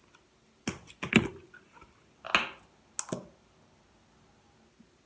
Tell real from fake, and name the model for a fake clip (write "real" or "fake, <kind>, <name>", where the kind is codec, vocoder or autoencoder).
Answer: real